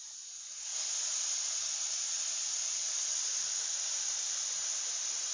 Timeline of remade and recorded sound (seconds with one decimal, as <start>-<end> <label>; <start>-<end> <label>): 0.0-0.7 recorded; 0.7-3.5 remade; 3.5-5.3 recorded